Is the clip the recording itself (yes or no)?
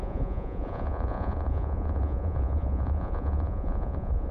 no